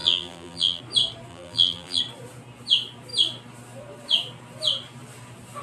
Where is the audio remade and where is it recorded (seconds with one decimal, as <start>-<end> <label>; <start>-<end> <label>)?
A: 0.0-0.8 remade; 0.8-1.3 recorded; 1.3-2.0 remade; 2.0-5.6 recorded